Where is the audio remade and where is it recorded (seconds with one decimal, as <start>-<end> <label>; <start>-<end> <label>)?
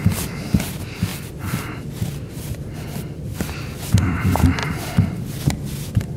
0.0-6.2 recorded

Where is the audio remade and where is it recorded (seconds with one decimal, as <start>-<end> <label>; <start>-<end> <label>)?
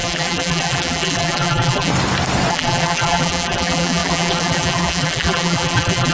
0.0-1.9 remade; 1.9-2.5 recorded; 2.5-6.1 remade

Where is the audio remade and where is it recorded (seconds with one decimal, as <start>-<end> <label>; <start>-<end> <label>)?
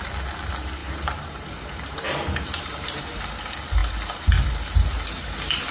0.0-0.8 recorded; 0.8-3.2 remade; 3.2-5.7 recorded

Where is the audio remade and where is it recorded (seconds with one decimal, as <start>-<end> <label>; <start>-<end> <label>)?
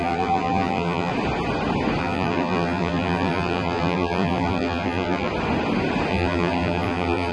0.0-1.1 remade; 1.1-2.0 recorded; 2.0-5.3 remade; 5.3-6.1 recorded; 6.1-7.3 remade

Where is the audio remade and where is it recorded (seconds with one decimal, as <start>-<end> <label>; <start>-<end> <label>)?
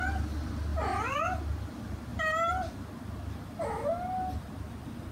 0.0-5.1 recorded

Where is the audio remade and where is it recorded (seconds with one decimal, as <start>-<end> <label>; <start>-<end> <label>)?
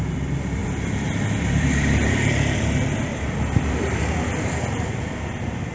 0.0-0.6 recorded; 0.6-4.0 remade; 4.0-5.7 recorded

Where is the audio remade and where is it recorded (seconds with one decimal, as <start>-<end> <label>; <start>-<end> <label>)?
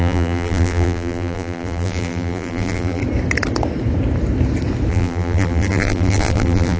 0.0-3.0 remade; 3.0-4.9 recorded; 4.9-6.8 remade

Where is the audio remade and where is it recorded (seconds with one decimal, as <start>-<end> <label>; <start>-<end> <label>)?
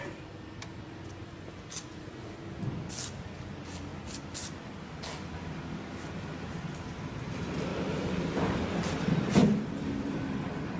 0.0-7.7 recorded; 7.7-8.6 remade; 8.6-9.4 recorded; 9.4-10.1 remade; 10.1-10.8 recorded